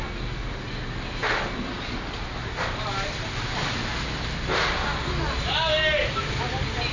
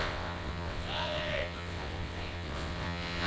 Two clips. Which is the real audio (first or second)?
first